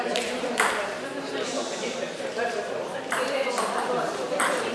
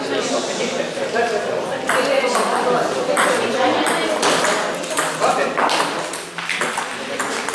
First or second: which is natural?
second